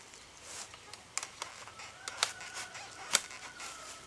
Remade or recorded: recorded